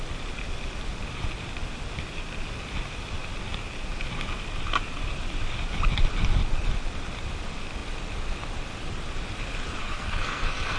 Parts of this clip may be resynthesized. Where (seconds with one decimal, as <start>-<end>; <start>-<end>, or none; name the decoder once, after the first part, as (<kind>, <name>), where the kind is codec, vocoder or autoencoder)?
9.8-10.8 (codec, SNAC)